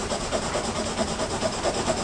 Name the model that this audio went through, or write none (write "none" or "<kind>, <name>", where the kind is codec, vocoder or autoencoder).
vocoder, BigVGAN v2